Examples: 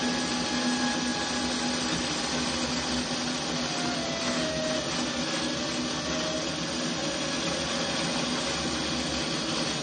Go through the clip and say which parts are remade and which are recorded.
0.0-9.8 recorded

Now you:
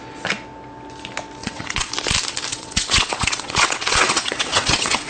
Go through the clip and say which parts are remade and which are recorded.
0.0-1.4 recorded; 1.4-1.9 remade; 1.9-2.5 recorded; 2.5-5.1 remade